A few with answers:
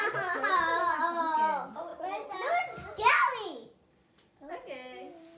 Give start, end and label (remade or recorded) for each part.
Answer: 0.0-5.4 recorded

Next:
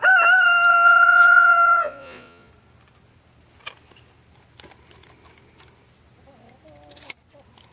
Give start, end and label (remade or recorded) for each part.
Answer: 0.0-0.7 recorded; 0.7-2.5 remade; 2.5-7.7 recorded

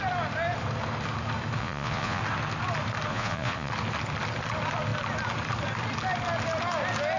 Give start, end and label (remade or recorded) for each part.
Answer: 0.0-1.6 recorded; 1.6-2.2 remade; 2.2-3.1 recorded; 3.1-3.7 remade; 3.7-7.2 recorded

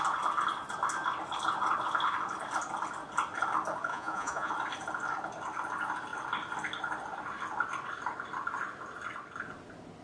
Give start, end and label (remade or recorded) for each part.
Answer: 0.0-3.9 recorded; 3.9-4.5 remade; 4.5-10.0 recorded

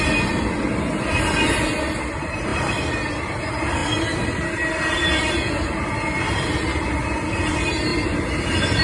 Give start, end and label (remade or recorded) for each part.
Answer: 0.0-8.8 recorded

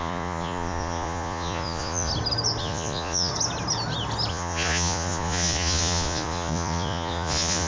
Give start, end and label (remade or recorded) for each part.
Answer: 0.0-2.1 remade; 2.1-2.6 recorded; 2.6-3.3 remade; 3.3-4.3 recorded; 4.3-7.7 remade

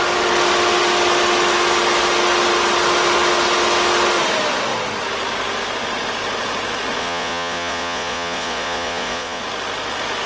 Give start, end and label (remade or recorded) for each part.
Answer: 0.0-7.0 recorded; 7.0-9.4 remade; 9.4-10.3 recorded

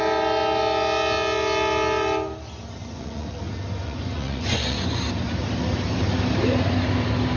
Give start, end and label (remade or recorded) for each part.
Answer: 0.0-2.8 recorded; 2.8-3.4 remade; 3.4-3.8 recorded; 3.8-5.0 remade; 5.0-7.4 recorded